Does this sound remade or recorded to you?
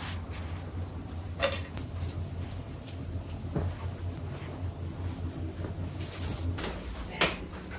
recorded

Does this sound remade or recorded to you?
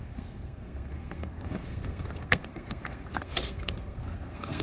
remade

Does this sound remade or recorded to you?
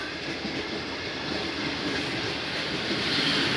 recorded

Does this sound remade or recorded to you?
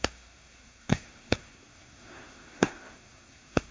remade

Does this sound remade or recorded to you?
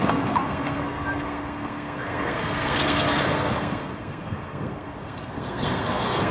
remade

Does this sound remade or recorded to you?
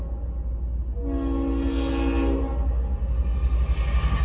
recorded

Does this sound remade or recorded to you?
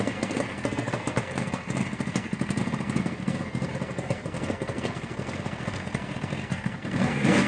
remade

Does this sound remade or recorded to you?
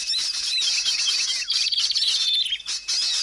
recorded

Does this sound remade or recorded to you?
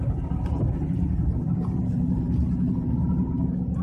recorded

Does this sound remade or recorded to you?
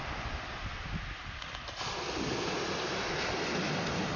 recorded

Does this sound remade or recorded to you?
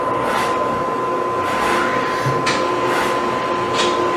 recorded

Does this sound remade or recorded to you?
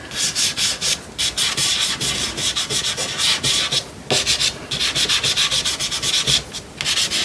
recorded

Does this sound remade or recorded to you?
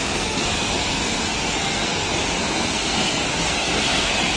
remade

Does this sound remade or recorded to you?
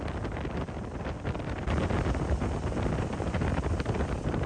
recorded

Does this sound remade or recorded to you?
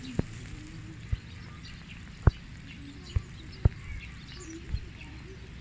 recorded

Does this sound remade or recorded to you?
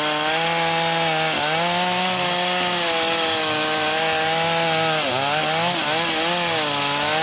recorded